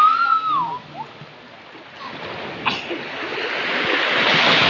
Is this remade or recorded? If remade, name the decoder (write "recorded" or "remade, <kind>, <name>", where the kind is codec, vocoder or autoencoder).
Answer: recorded